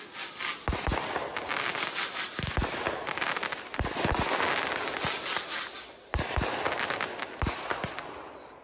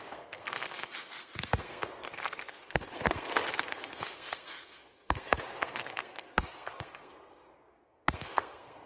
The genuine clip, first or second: first